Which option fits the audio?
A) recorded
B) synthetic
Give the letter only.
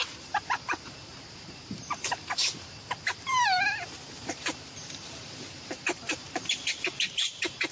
B